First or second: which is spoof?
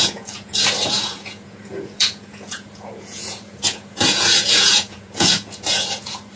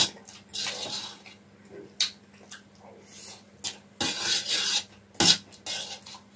first